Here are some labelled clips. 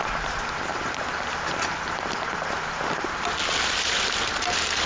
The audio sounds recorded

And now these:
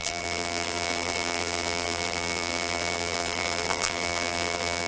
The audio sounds remade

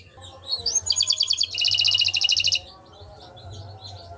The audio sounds recorded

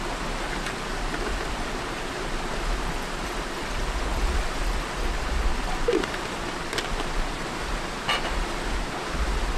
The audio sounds remade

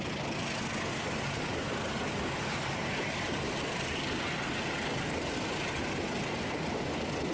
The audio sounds recorded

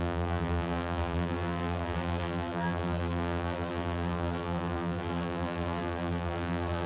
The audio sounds remade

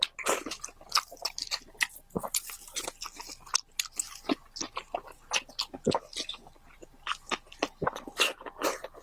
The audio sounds recorded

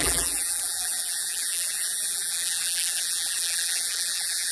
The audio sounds remade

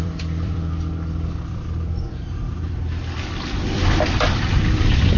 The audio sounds remade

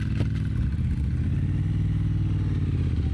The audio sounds recorded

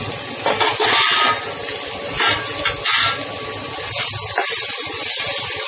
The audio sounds recorded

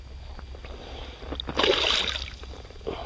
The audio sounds recorded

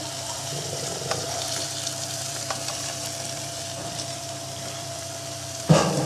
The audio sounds remade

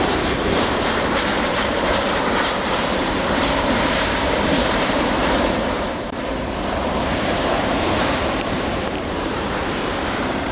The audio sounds remade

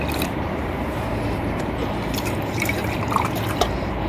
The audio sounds remade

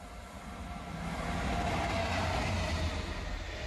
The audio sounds recorded